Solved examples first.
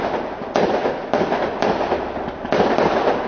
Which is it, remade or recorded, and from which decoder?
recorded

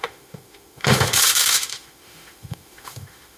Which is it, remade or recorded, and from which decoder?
remade, autoencoder, DAC-VAE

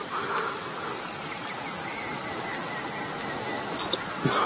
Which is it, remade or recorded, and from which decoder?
recorded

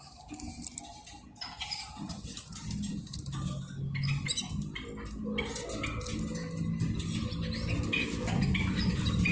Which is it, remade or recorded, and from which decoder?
recorded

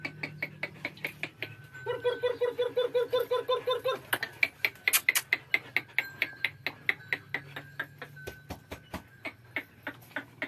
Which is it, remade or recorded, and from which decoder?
recorded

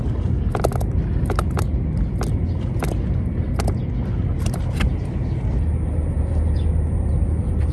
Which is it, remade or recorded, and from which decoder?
recorded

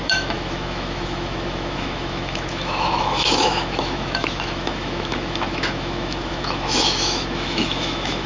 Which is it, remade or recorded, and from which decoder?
remade, autoencoder, DAC-VAE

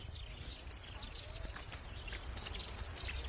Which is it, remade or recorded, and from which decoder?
recorded